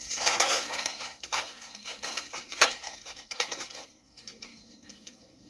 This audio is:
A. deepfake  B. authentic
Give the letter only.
A